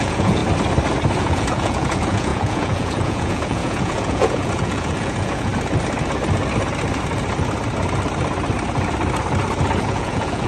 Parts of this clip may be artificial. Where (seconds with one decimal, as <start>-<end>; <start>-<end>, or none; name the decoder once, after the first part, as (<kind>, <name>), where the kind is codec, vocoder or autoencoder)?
0.0-0.4 (vocoder, Vocos); 1.2-5.5; 9.8-10.5